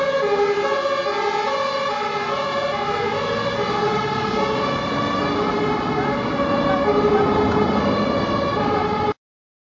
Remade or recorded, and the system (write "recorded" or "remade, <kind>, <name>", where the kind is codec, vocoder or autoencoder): recorded